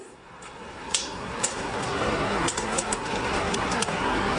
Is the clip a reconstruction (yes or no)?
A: yes